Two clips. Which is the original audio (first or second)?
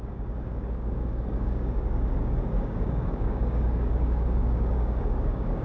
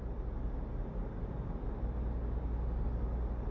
second